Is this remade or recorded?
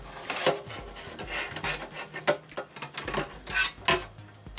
recorded